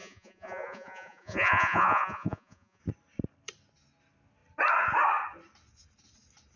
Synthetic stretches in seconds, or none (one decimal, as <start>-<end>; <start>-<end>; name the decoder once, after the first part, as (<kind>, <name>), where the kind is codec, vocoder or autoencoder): 0.0-2.8 (vocoder, Vocos)